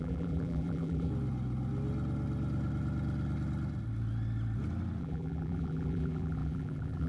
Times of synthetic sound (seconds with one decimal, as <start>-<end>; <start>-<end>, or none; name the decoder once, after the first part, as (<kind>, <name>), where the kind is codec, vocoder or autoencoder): 0.0-1.1 (vocoder, BigVGAN v2); 5.0-7.1